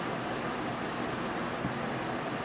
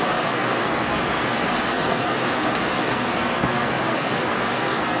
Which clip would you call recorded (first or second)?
first